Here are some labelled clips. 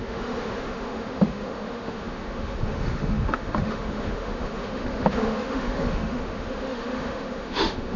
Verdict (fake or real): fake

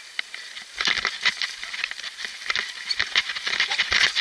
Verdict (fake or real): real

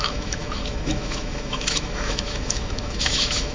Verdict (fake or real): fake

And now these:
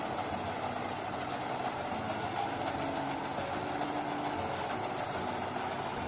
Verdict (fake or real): real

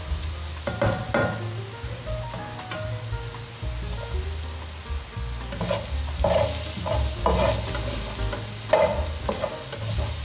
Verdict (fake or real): real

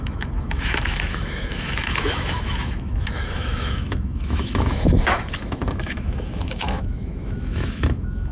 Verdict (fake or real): fake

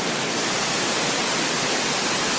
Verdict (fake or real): real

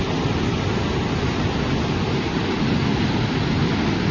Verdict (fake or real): real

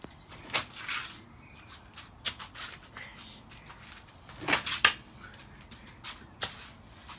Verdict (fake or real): real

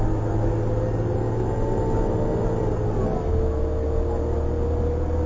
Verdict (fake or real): real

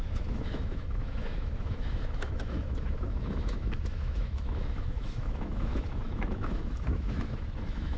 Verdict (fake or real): fake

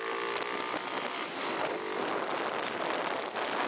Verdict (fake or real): real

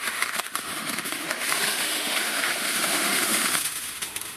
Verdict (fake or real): fake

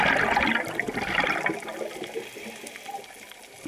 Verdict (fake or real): real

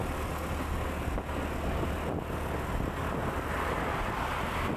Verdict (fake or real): real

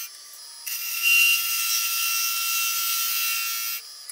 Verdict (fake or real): real